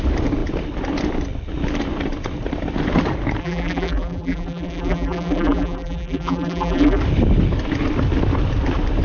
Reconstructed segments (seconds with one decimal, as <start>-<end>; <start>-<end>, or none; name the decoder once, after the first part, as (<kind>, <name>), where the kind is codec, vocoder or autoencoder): 3.4-7.0 (vocoder, BigVGAN v2)